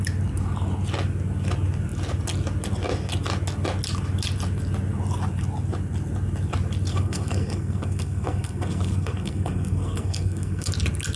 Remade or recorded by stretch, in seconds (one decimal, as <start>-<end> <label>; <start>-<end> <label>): 0.0-6.9 recorded; 6.9-10.7 remade; 10.7-11.2 recorded